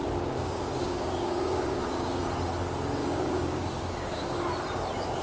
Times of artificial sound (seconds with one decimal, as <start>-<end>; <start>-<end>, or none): 0.0-2.2; 3.0-4.4